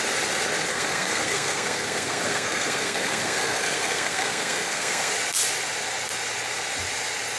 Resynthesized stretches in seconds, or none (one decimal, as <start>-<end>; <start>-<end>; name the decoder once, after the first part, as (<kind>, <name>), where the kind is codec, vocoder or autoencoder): 0.7-5.1 (codec, SNAC)